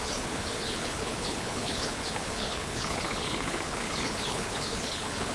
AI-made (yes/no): yes